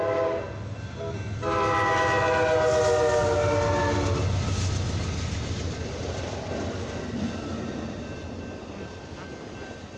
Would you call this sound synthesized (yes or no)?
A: no